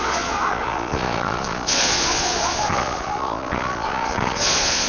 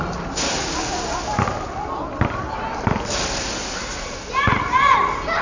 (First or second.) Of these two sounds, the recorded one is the second